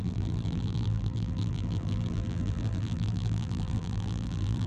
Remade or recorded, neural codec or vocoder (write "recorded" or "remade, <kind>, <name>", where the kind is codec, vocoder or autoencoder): remade, vocoder, BigVGAN v2